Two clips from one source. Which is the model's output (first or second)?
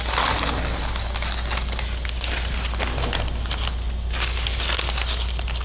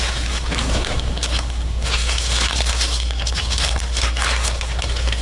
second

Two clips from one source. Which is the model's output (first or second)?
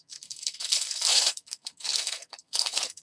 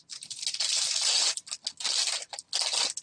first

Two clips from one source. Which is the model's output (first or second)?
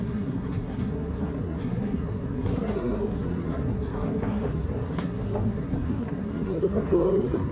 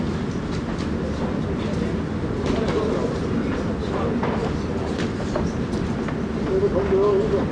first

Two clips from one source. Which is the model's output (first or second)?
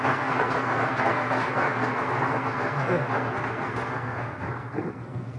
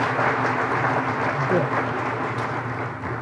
first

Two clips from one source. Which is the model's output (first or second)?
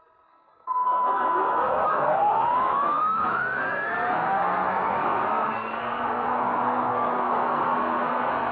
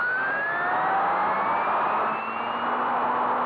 first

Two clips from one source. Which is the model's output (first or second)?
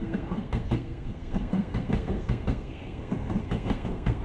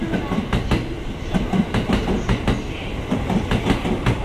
first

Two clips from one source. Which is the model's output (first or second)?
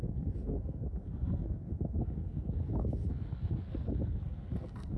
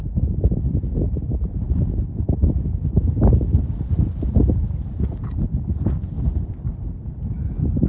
first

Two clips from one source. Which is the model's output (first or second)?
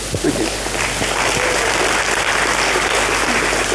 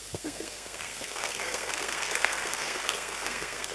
second